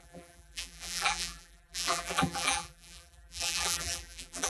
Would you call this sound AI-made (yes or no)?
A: yes